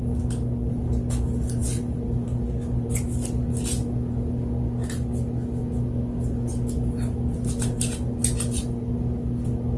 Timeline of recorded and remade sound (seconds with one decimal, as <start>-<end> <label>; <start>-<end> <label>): 0.0-9.8 recorded